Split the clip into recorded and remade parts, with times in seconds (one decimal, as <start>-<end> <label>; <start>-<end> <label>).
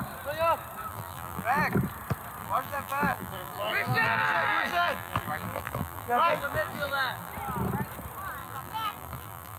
0.0-0.9 recorded; 0.9-1.6 remade; 1.6-2.4 recorded; 2.4-7.3 remade; 7.3-8.4 recorded; 8.4-9.6 remade